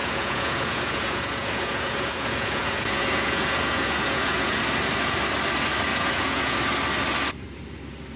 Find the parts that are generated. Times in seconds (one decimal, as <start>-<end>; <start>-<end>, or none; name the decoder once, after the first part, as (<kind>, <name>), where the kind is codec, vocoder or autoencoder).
0.0-4.6 (vocoder, Vocos); 5.9-6.6